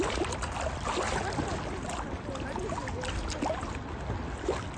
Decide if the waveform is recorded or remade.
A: recorded